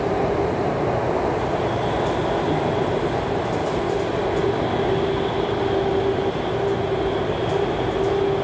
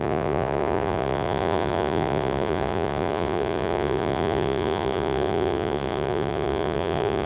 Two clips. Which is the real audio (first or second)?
first